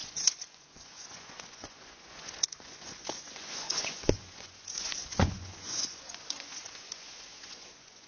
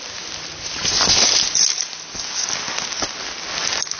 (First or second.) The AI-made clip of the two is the first